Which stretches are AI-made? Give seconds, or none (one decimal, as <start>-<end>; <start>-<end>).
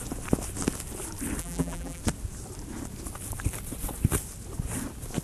1.4-2.0